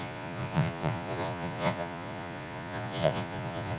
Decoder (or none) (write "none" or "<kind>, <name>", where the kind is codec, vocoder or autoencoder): vocoder, Vocos